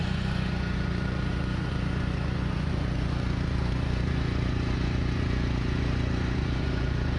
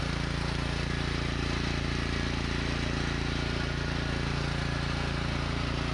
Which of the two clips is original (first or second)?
second